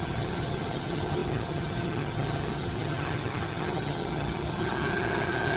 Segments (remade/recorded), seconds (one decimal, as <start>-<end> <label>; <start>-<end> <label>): 0.0-5.6 remade